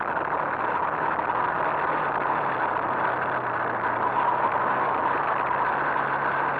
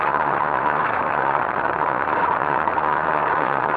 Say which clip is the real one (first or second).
first